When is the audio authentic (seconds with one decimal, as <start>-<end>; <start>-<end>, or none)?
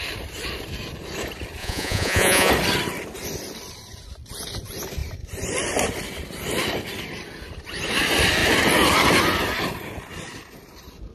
0.0-1.6; 2.5-11.1